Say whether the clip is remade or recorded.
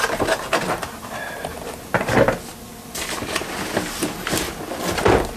recorded